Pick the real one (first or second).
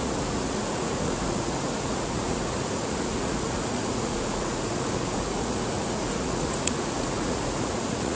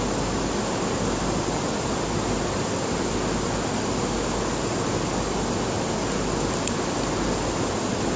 second